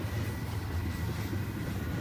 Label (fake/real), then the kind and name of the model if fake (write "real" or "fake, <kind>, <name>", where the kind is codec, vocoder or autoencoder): real